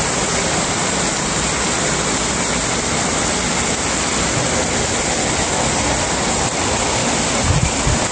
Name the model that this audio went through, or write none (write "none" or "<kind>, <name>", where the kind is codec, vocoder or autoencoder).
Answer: none